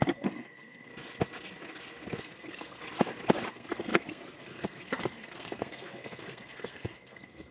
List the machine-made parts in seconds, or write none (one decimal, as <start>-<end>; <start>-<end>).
0.0-0.9; 2.2-2.8; 3.5-7.5